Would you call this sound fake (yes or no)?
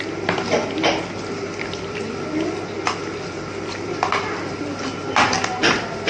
no